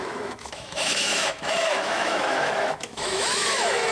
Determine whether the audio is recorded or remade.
remade